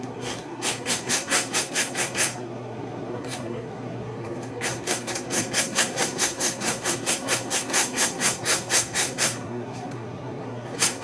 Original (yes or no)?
no